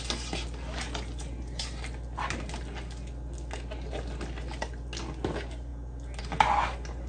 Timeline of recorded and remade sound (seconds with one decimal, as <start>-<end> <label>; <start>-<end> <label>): 0.0-7.1 recorded